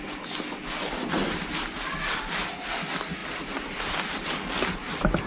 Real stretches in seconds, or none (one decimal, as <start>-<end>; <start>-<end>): 0.0-5.3